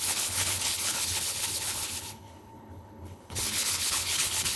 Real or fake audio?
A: fake